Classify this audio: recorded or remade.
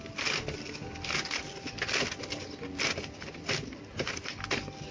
recorded